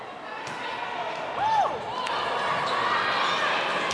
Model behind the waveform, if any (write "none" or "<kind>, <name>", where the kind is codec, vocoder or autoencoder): none